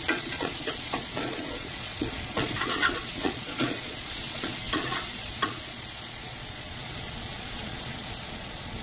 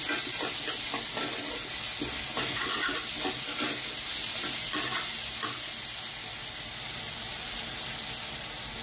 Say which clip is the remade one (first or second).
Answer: first